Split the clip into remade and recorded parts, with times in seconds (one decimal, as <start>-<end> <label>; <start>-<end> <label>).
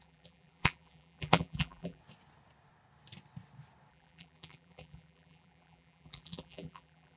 0.0-2.0 remade; 2.0-3.9 recorded; 3.9-7.2 remade